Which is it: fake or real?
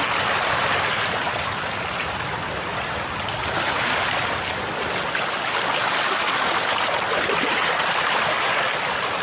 real